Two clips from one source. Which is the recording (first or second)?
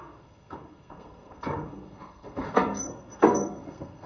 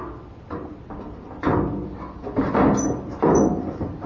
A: second